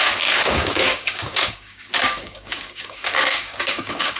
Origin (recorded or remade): remade